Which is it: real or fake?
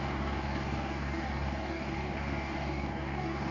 fake